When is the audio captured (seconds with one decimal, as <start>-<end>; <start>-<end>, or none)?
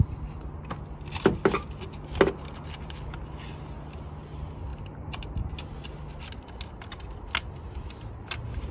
0.0-8.7